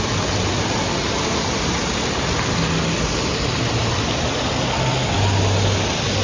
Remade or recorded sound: recorded